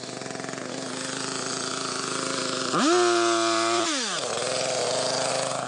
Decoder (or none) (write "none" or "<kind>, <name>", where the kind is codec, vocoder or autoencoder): none